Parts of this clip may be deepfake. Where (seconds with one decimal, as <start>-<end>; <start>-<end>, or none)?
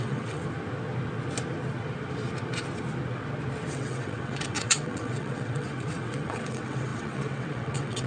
0.0-0.4; 3.7-8.1